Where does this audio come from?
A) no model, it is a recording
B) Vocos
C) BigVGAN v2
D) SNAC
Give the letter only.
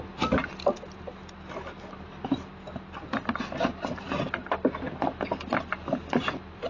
A